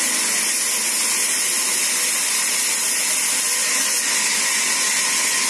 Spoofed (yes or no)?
no